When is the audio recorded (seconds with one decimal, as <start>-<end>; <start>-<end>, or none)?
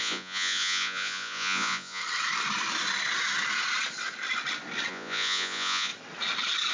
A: 2.0-4.9; 5.9-6.7